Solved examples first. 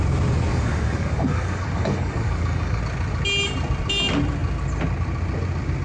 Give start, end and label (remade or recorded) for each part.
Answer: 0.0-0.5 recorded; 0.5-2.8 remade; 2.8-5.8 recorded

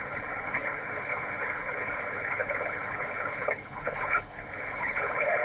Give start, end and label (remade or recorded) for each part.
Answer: 0.0-5.4 remade